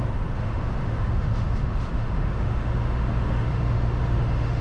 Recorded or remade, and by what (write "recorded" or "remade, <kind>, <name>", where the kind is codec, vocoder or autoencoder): remade, autoencoder, DAC-VAE